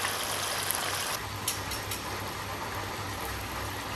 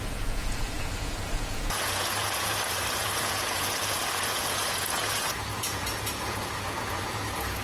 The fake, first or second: second